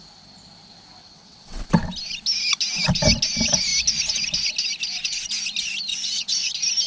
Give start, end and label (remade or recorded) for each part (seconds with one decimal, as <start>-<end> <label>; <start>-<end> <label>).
0.0-1.0 recorded; 1.0-1.6 remade; 1.6-5.9 recorded; 5.9-6.5 remade; 6.5-6.9 recorded